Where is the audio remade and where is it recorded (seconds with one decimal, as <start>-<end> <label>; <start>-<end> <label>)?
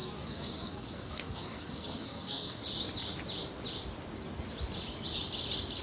0.0-2.6 remade; 2.6-5.8 recorded